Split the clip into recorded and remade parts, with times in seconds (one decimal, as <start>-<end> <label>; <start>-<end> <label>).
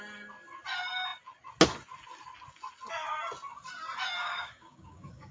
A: 0.0-4.2 recorded; 4.2-5.3 remade